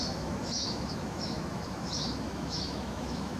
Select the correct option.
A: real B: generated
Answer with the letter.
B